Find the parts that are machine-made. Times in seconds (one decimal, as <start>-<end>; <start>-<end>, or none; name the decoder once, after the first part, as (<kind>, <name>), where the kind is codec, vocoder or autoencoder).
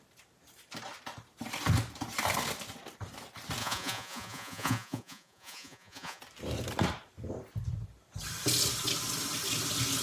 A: 3.6-6.2 (vocoder, Vocos)